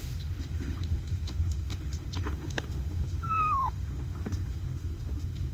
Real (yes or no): no